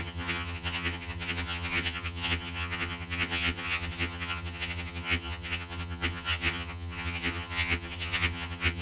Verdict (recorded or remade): remade